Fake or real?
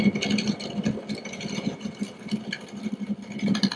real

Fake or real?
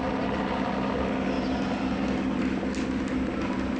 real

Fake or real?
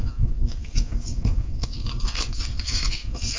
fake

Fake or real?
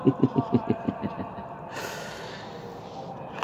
real